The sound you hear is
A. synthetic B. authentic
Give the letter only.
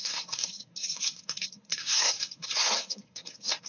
A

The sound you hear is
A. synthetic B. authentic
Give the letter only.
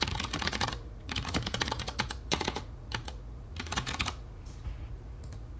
A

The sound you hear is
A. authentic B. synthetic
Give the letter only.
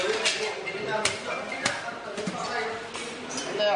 A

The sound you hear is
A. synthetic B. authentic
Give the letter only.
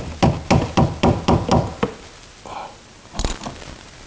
B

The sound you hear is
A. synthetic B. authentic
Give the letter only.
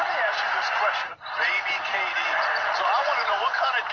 A